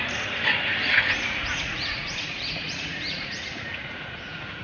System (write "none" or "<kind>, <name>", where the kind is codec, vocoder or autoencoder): vocoder, Vocos